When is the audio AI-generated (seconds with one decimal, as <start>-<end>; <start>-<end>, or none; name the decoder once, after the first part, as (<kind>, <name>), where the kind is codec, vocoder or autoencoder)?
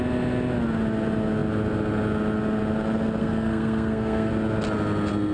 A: 3.2-4.3 (codec, SNAC)